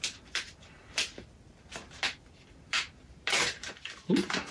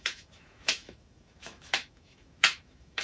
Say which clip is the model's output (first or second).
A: second